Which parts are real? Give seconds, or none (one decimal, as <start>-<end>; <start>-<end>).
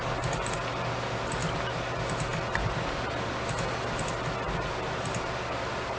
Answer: 0.0-6.0